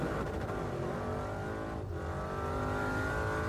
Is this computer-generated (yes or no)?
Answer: no